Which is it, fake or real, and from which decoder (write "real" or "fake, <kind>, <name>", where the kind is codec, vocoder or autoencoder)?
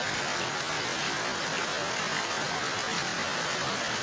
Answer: real